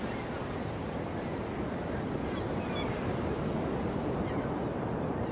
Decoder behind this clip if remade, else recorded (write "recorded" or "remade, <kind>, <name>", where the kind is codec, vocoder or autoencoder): recorded